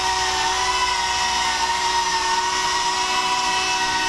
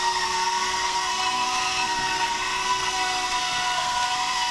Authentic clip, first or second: first